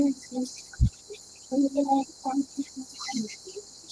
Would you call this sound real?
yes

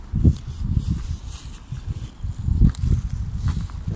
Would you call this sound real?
yes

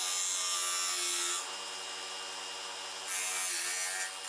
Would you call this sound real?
yes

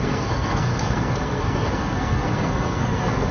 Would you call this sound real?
no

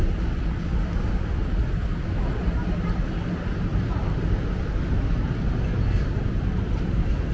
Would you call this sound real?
yes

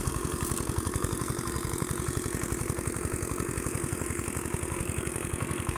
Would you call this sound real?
no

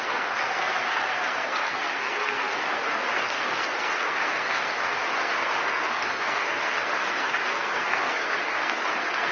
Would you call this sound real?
no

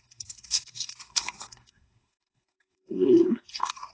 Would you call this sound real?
no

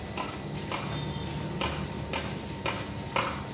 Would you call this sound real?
yes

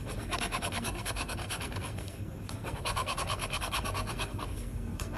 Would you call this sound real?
no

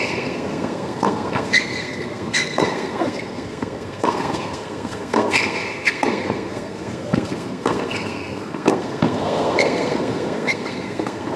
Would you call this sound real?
no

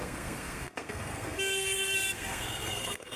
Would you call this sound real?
no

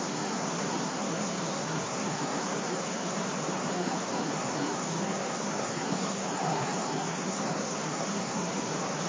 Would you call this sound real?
no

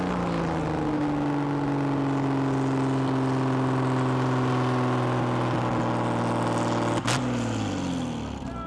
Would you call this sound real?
yes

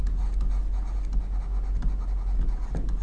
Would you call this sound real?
yes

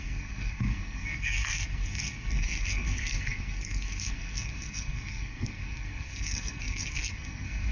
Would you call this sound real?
no